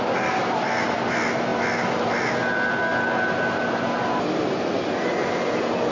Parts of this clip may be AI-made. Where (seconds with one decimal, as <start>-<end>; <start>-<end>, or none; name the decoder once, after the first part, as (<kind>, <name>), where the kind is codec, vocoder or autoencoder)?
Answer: none